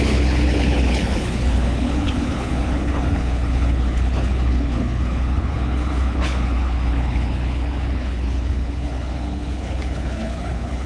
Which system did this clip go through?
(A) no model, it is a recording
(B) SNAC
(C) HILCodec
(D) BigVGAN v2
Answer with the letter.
C